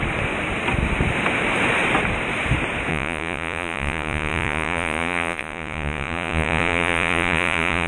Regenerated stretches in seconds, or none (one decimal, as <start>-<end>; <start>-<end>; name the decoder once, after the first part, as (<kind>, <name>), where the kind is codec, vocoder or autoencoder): 2.9-7.9 (vocoder, Vocos)